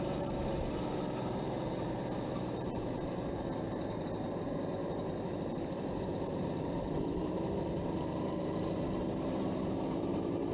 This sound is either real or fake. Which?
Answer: fake